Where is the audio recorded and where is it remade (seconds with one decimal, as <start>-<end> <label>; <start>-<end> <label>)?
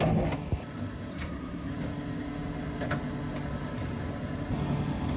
0.0-1.1 recorded; 1.1-1.7 remade; 1.7-5.2 recorded